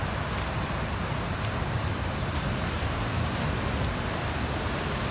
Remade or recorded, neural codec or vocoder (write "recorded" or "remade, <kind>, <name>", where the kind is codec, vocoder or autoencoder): recorded